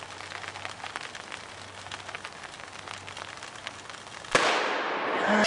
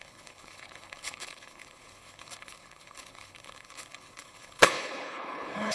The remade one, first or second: second